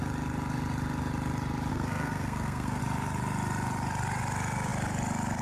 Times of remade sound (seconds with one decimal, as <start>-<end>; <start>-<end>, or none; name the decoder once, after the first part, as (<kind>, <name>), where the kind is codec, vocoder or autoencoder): 1.7-2.8 (codec, SNAC)